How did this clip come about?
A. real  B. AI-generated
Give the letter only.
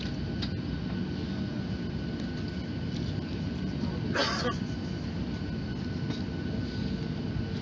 A